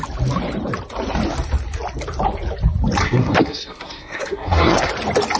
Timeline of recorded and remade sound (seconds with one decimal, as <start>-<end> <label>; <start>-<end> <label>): 0.0-3.0 recorded; 3.0-4.9 remade; 4.9-5.4 recorded